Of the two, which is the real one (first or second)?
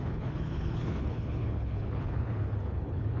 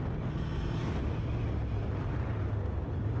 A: second